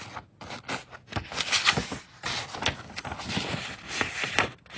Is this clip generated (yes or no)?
no